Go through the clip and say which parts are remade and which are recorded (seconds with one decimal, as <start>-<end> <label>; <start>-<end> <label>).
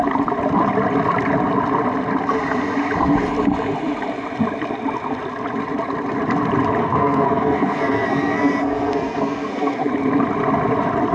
0.0-6.8 recorded; 6.8-9.9 remade; 9.9-11.1 recorded